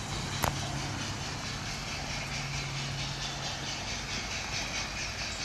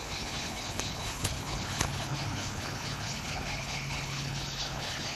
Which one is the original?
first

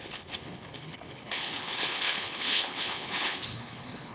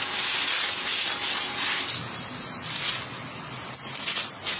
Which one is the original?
second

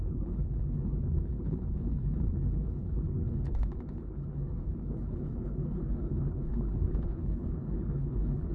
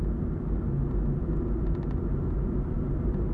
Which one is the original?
second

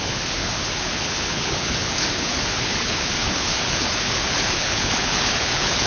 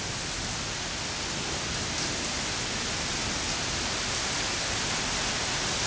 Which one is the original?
second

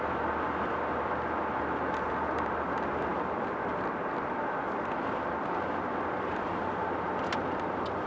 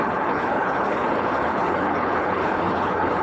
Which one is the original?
first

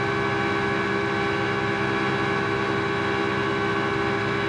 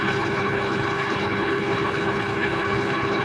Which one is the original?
first